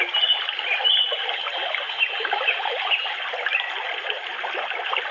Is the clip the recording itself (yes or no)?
yes